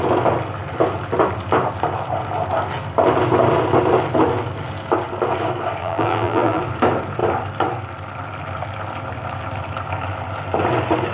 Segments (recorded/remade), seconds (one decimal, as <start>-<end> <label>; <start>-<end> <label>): 0.0-5.8 recorded; 5.8-6.6 remade; 6.6-11.1 recorded